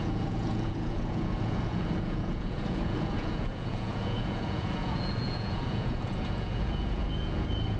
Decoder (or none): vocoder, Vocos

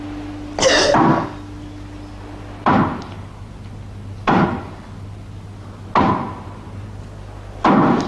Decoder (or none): none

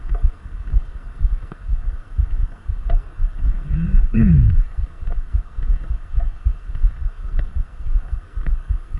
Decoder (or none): codec, SNAC